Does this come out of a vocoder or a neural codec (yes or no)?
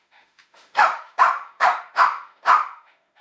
yes